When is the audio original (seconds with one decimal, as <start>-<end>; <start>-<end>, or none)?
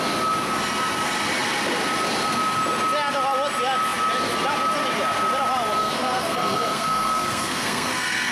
0.0-5.8